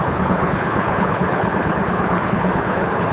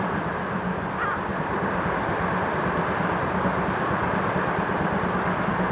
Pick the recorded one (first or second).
second